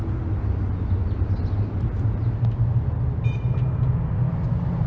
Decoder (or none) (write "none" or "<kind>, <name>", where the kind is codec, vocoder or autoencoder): none